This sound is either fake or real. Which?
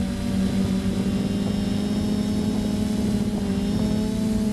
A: real